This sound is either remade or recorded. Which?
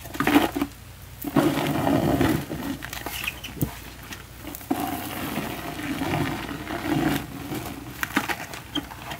recorded